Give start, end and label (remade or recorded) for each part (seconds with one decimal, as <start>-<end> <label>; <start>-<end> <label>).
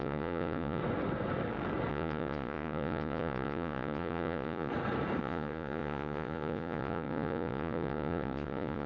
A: 0.0-0.8 remade; 0.8-1.9 recorded; 1.9-4.7 remade; 4.7-5.2 recorded; 5.2-8.9 remade